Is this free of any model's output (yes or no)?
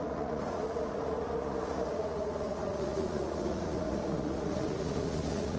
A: no